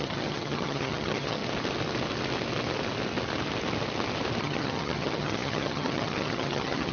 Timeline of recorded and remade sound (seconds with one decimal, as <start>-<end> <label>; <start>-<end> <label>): 0.0-1.4 remade; 1.4-4.4 recorded; 4.4-6.9 remade